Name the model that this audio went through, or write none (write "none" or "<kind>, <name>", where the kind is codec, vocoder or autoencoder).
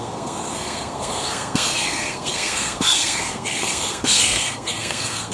codec, SNAC